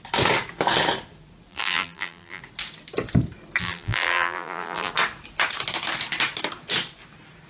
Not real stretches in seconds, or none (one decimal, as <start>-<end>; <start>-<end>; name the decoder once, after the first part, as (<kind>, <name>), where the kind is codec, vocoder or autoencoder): 1.5-2.4 (vocoder, BigVGAN v2); 3.6-4.9